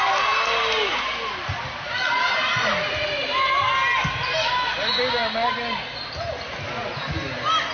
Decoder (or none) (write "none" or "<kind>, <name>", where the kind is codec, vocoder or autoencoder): none